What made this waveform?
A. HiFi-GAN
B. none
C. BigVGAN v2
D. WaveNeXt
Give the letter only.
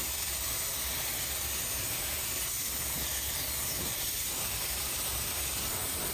C